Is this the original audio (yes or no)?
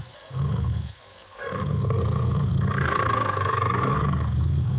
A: yes